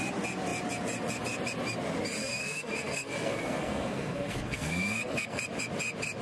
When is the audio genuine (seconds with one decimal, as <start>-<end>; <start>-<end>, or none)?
0.0-2.2; 5.4-6.2